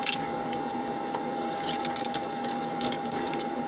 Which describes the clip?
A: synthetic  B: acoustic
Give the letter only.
A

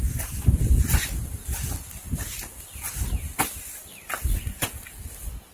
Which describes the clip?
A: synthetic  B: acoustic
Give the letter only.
B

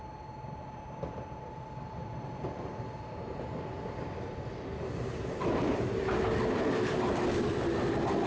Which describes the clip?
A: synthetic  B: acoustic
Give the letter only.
A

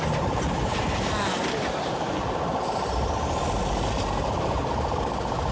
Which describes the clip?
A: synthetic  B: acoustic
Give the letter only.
B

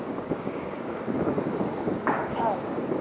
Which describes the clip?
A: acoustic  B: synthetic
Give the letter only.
B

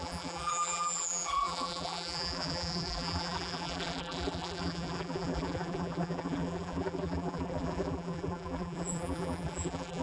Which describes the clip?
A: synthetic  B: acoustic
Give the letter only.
A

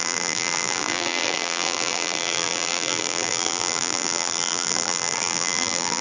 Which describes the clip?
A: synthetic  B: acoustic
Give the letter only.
A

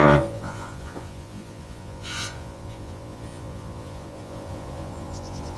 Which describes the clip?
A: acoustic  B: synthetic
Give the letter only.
B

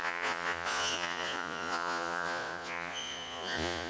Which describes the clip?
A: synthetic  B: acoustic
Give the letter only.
A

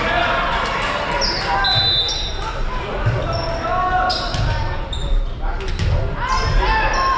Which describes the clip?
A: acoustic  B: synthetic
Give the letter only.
A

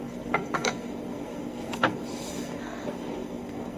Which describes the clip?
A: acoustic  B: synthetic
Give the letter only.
B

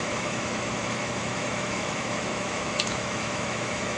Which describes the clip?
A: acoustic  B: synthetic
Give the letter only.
B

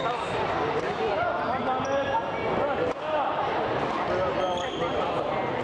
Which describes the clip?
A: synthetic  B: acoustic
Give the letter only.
B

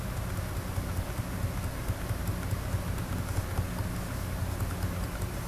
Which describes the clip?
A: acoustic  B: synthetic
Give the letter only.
A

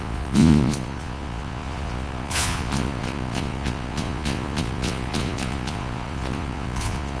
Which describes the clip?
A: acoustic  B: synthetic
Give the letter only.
B